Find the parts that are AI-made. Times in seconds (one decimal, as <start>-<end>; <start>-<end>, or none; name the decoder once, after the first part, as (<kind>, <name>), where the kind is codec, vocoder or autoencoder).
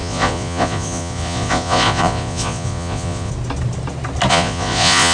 0.0-3.3 (vocoder, Vocos); 4.3-5.1